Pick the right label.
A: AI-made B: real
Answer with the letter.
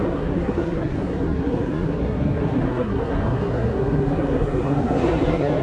A